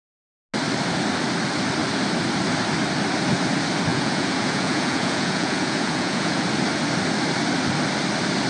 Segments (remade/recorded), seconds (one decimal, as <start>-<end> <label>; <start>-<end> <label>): 0.0-3.9 recorded; 3.9-6.4 remade; 6.4-8.5 recorded